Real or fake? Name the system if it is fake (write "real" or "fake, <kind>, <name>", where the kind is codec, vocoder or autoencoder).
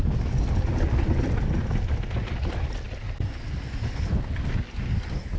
real